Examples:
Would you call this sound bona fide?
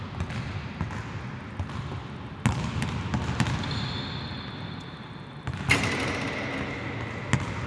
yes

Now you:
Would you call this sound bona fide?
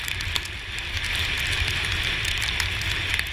no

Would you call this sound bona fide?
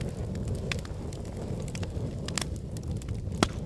yes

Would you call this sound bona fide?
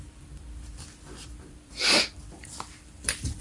no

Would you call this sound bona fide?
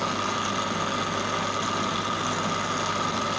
yes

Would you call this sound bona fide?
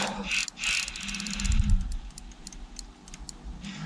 yes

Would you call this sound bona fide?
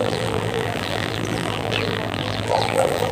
no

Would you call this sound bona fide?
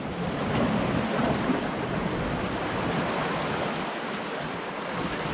yes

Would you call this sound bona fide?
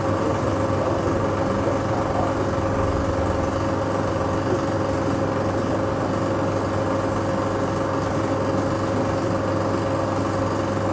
yes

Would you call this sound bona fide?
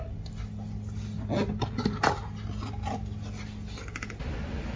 yes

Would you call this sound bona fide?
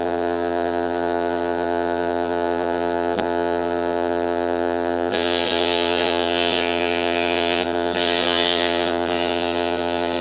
no